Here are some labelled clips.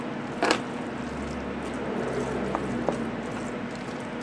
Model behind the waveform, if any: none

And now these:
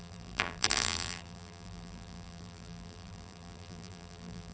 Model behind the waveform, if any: vocoder, BigVGAN v2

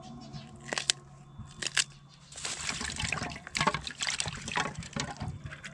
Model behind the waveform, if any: none